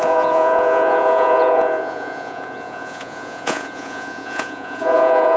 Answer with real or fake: fake